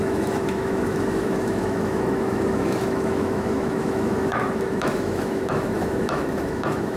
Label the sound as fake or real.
fake